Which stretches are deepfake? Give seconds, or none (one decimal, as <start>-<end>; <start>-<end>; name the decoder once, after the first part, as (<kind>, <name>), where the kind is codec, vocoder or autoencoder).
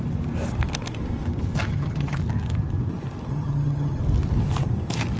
1.7-2.2 (vocoder, HiFi-GAN); 3.3-4.0